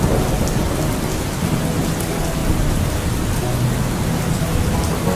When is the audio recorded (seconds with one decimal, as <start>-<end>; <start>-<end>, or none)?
0.0-2.4; 3.1-5.2